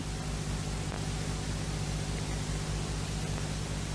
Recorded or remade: recorded